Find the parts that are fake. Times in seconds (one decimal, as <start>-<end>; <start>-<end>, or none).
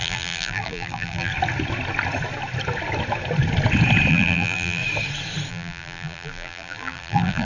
0.0-1.3; 4.1-4.8; 5.5-7.4